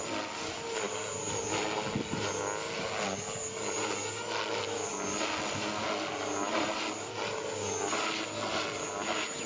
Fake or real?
real